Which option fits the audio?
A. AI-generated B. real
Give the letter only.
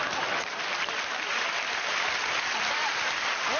B